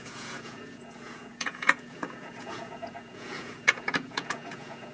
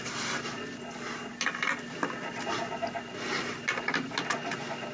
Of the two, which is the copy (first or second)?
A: first